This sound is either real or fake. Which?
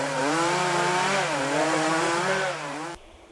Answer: fake